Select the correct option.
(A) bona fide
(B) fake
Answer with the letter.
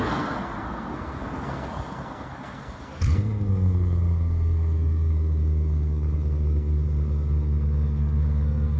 B